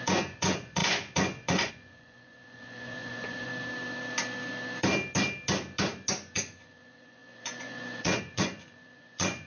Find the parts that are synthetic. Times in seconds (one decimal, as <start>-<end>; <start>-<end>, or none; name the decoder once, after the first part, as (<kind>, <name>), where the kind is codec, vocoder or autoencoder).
0.0-3.5 (vocoder, Vocos); 6.1-9.5

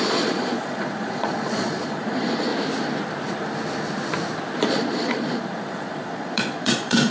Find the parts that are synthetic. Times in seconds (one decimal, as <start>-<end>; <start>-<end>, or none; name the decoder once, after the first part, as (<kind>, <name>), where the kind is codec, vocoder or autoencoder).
0.0-2.5 (vocoder, Vocos); 4.7-7.1